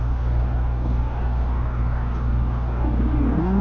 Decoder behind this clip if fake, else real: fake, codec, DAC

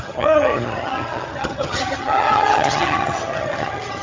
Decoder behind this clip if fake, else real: fake, vocoder, HiFi-GAN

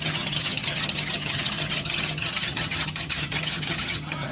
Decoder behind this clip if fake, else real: fake, vocoder, HiFi-GAN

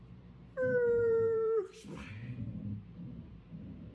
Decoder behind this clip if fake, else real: fake, vocoder, BigVGAN v2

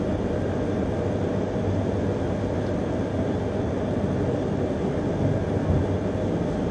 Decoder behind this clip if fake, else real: real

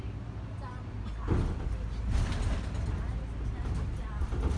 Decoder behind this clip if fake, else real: real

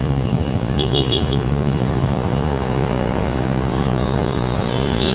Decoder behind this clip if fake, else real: fake, vocoder, Vocos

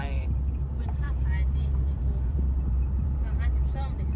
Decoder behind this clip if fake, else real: fake, vocoder, BigVGAN v2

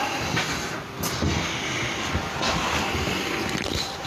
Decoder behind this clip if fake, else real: real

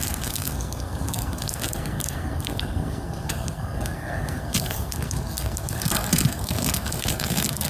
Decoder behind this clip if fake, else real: fake, codec, SNAC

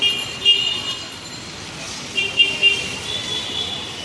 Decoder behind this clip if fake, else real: real